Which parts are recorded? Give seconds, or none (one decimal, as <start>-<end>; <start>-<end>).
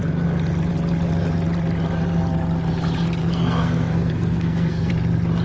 0.0-3.2; 4.9-5.4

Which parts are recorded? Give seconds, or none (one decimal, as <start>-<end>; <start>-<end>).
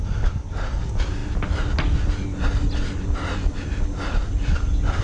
0.0-5.0